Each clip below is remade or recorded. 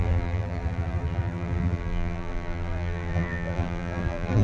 remade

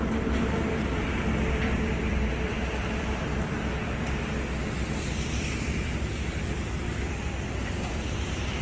remade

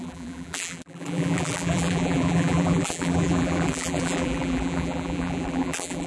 remade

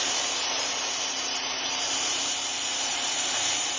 remade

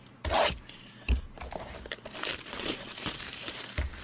remade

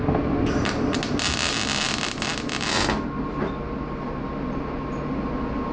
recorded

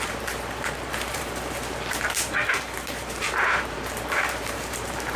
remade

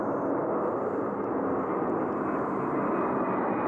recorded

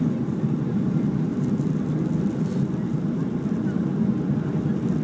remade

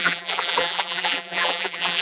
remade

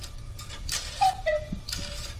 recorded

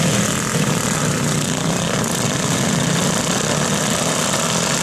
recorded